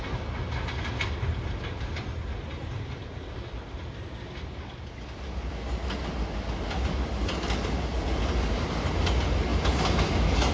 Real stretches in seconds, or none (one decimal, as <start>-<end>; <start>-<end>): 0.0-10.5